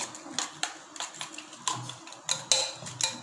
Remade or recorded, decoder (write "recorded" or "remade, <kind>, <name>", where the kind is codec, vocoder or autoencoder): recorded